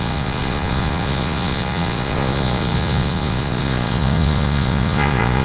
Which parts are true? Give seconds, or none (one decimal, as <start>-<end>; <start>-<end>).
none